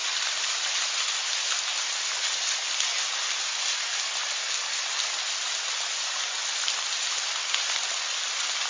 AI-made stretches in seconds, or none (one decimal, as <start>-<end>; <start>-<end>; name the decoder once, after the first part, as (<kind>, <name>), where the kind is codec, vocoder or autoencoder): none